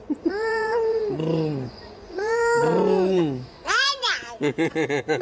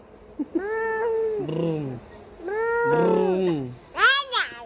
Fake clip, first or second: first